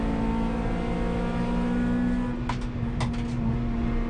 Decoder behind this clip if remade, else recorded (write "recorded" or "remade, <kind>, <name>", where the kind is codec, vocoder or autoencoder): recorded